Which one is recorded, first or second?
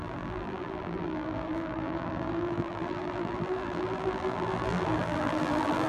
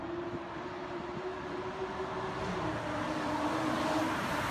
second